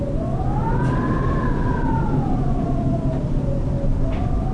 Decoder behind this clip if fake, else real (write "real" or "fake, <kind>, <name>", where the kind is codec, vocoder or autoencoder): real